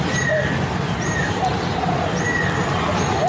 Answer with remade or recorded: recorded